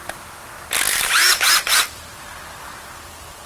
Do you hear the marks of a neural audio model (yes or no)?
yes